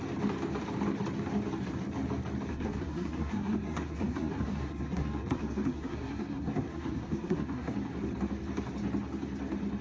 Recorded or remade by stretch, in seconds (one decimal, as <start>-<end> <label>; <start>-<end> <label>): 0.0-2.5 recorded; 2.5-7.7 remade; 7.7-9.8 recorded